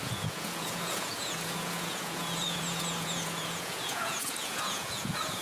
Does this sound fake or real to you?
fake